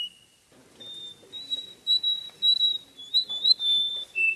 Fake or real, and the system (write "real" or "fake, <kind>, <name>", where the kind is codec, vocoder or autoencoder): real